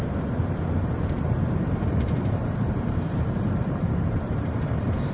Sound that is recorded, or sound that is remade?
remade